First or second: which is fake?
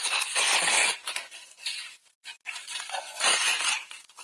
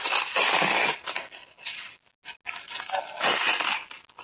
first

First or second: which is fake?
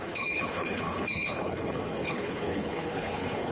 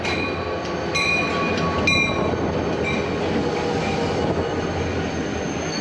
first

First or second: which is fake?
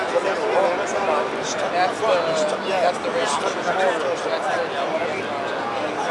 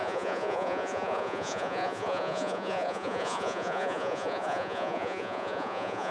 second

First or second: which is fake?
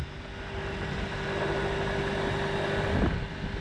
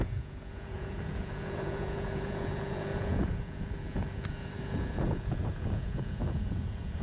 second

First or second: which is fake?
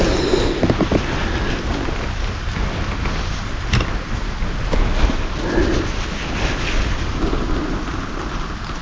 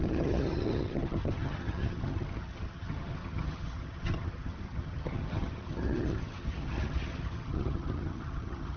second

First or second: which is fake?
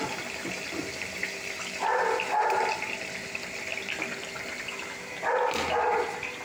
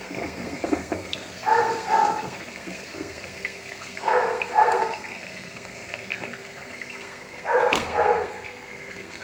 second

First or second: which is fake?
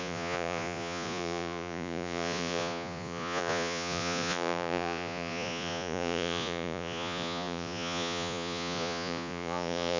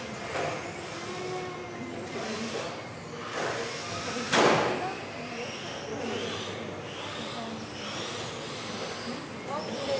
first